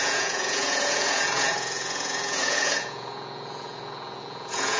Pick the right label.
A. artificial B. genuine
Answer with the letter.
A